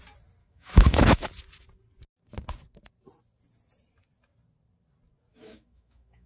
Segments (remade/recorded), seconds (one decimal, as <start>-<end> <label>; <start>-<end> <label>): 0.0-0.4 recorded; 0.4-1.2 remade; 1.2-5.3 recorded; 5.3-6.3 remade